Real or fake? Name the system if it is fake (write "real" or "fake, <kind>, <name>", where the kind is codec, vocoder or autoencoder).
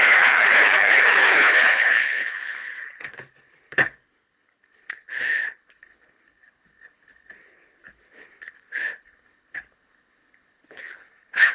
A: fake, codec, HILCodec